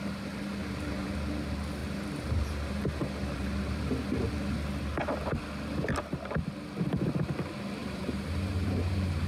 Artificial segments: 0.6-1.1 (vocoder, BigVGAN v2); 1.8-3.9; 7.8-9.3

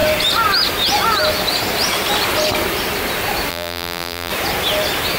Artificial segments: 3.5-4.3 (vocoder, BigVGAN v2)

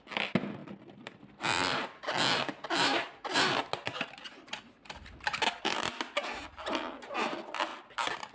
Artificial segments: 2.8-3.6 (vocoder, BigVGAN v2)

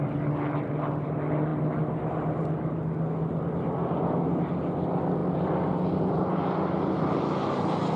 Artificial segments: none

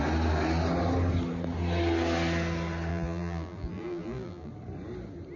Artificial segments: 2.9-4.5 (vocoder, BigVGAN v2)

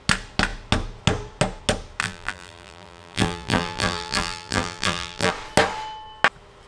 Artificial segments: 2.0-5.3 (vocoder, BigVGAN v2)